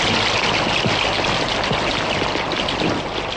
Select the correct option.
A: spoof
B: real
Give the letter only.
B